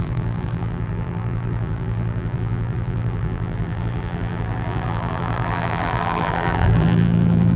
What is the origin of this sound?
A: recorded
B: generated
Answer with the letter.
B